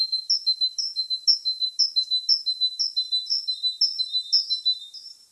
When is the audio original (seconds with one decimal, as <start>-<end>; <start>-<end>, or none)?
0.0-5.3